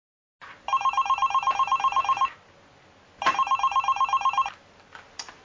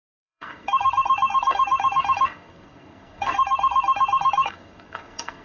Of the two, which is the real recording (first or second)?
first